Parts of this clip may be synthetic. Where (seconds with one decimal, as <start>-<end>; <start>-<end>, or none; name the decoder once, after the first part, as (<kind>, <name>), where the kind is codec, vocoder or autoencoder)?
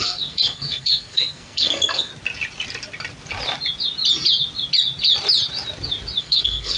0.0-2.1 (codec, SNAC); 6.2-6.8